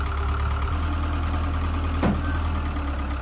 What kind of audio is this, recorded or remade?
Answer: recorded